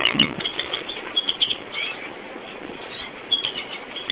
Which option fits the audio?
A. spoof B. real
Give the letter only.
A